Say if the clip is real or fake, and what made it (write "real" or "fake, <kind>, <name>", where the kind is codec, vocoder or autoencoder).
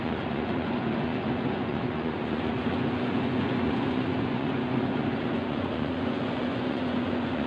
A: fake, vocoder, Vocos